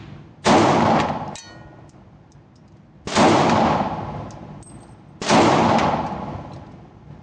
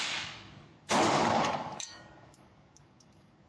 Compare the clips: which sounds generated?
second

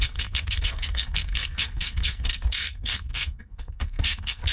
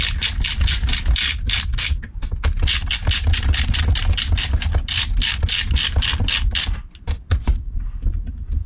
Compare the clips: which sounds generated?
first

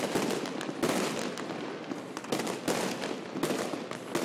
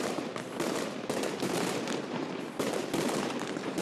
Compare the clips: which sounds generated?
second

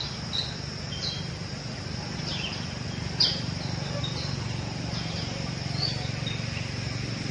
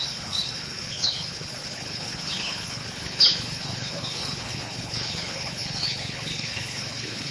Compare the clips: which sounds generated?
second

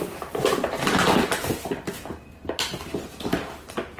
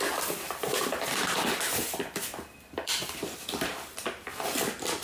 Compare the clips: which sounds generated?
second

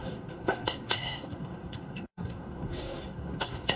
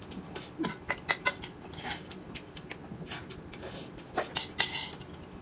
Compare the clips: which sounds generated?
first